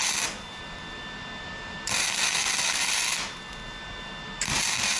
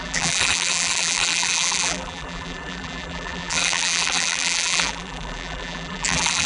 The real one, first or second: first